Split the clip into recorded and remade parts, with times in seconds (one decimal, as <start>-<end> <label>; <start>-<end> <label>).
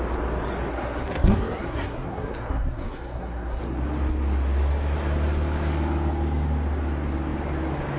0.0-0.7 recorded; 0.7-3.6 remade; 3.6-8.0 recorded